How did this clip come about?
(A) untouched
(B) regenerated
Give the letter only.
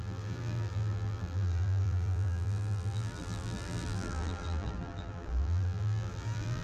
B